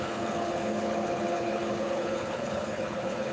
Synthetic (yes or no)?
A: yes